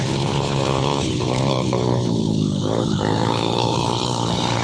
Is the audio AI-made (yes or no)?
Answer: yes